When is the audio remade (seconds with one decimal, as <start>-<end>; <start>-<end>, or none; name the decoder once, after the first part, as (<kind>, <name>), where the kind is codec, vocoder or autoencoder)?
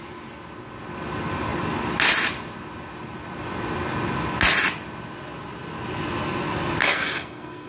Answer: 6.8-7.7 (codec, SNAC)